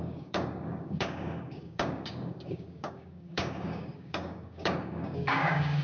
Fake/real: fake